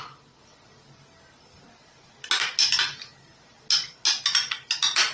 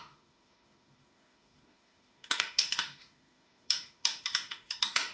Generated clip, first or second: second